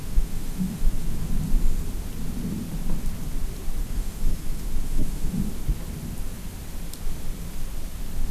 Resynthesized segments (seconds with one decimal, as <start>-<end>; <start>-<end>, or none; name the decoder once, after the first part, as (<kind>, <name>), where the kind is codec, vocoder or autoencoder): 0.0-1.3 (autoencoder, DAC-VAE); 3.8-5.5